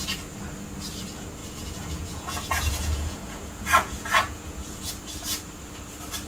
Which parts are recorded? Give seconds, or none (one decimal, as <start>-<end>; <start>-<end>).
0.0-1.4; 4.9-6.3

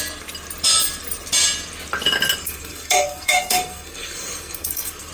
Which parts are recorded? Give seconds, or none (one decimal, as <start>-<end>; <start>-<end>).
0.0-2.4

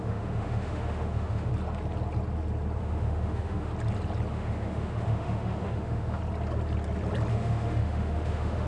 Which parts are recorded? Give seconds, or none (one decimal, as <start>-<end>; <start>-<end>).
1.5-2.8; 3.7-4.3; 6.2-7.3